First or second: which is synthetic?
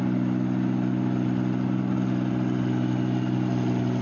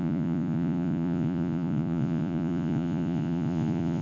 second